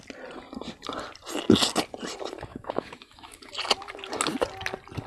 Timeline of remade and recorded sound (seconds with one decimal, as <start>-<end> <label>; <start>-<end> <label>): 0.0-2.5 recorded; 2.5-3.5 remade; 3.5-5.1 recorded